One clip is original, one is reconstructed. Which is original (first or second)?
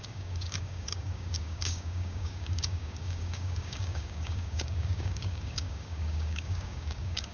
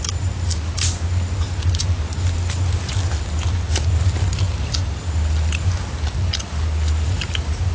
second